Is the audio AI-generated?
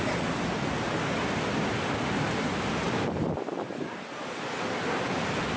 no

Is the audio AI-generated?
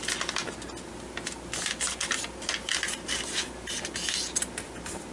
no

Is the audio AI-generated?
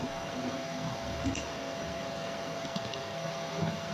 yes